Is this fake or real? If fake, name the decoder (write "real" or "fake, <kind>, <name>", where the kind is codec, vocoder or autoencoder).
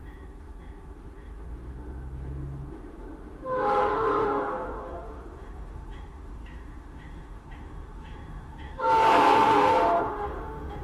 fake, autoencoder, DAC-VAE